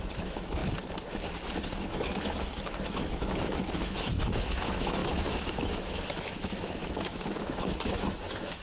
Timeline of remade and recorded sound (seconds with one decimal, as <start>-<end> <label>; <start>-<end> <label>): 0.0-0.6 remade; 0.6-1.8 recorded; 1.8-8.6 remade